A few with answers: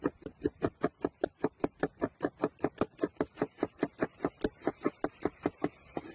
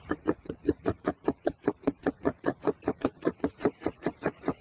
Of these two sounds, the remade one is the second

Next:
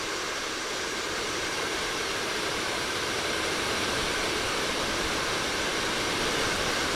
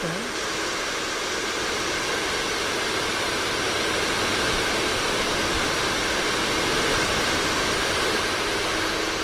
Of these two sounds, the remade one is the first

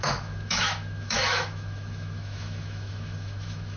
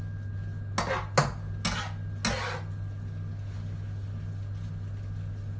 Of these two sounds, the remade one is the first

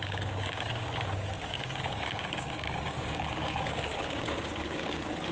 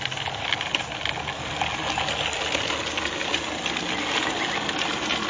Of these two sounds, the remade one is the first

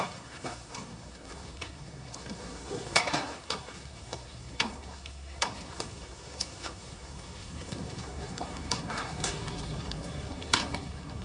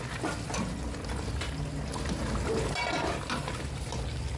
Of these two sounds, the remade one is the first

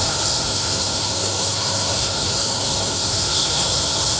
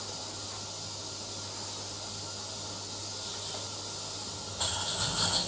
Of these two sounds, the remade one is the first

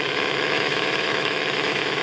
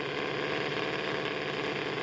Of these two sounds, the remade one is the first